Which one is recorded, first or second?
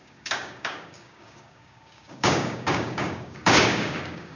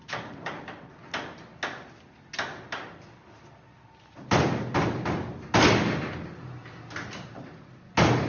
second